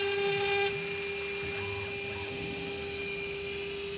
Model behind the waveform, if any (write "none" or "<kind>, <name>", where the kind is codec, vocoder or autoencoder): none